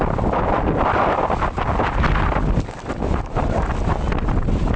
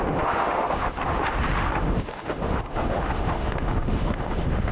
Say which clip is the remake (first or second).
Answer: second